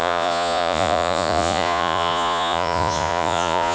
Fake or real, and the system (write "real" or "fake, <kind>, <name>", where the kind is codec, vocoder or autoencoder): fake, vocoder, Vocos